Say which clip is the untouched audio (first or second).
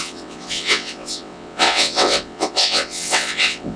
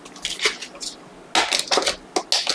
second